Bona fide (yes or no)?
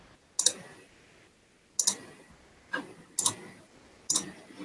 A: yes